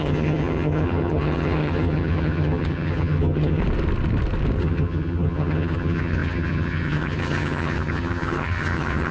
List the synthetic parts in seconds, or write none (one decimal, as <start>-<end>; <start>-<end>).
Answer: 0.0-3.6; 4.6-9.1